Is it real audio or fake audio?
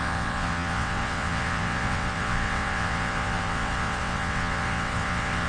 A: fake